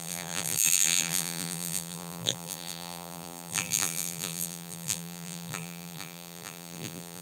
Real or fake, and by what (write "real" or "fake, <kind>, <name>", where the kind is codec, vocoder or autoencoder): fake, vocoder, BigVGAN v2